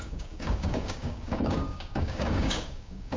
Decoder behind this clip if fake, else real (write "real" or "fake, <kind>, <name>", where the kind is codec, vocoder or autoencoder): fake, codec, DAC